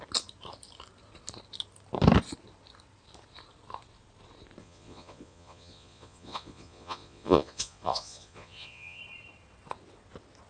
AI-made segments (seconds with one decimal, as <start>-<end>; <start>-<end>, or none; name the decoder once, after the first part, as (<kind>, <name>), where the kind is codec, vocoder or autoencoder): 4.6-9.0 (vocoder, Vocos)